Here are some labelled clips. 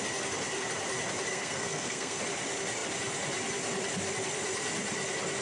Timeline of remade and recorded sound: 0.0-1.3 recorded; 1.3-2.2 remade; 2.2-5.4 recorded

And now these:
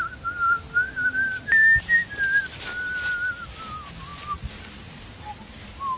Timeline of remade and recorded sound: 0.0-6.0 recorded